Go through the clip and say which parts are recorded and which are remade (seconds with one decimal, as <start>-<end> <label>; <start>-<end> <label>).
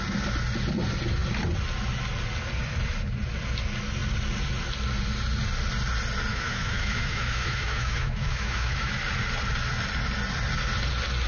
0.0-6.3 recorded; 6.3-9.0 remade; 9.0-11.3 recorded